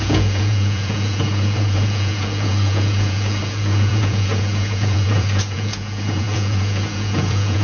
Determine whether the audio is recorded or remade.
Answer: remade